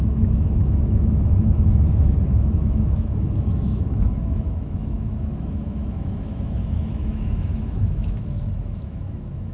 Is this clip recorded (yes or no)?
no